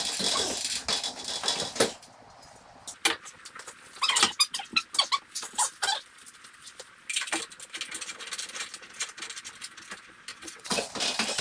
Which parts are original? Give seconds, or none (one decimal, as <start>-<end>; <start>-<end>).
0.0-10.3; 10.9-11.4